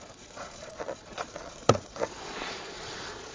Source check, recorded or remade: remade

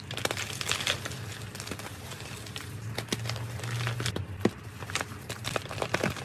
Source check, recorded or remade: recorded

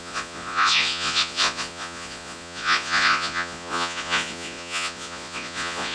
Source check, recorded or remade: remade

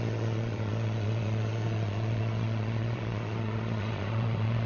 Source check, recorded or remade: remade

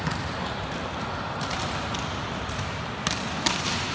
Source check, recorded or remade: recorded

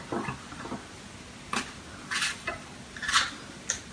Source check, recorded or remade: recorded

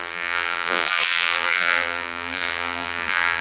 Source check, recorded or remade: remade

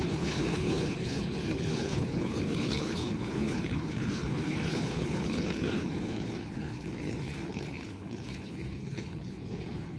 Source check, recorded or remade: remade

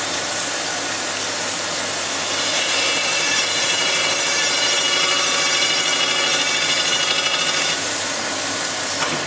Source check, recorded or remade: remade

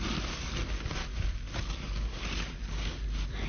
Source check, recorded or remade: recorded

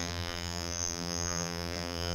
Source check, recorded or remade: remade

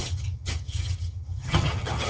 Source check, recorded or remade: remade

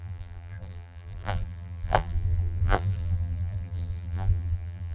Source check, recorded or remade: remade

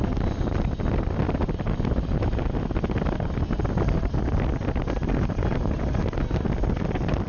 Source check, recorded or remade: recorded